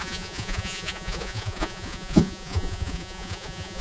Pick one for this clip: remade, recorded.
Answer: remade